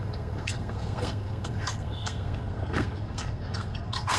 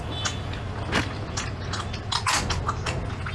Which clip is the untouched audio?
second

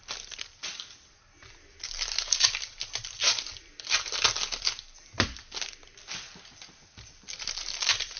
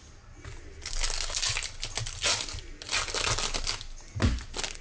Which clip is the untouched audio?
second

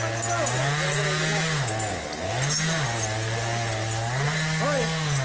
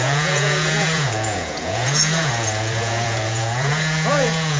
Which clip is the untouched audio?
first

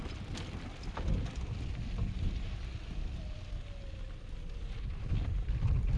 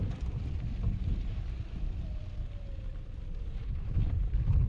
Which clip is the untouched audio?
first